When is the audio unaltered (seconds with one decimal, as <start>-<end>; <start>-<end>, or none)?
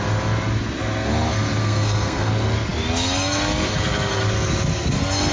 0.0-1.6; 2.3-5.3